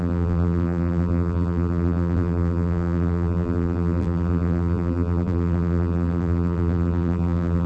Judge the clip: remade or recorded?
remade